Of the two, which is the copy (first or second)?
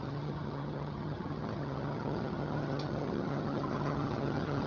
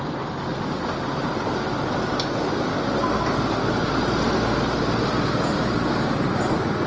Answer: first